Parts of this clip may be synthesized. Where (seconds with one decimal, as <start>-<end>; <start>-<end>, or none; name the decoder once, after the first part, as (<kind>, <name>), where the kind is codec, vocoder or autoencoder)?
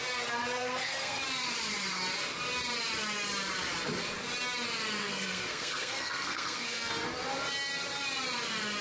0.6-1.2 (codec, SNAC); 5.0-6.9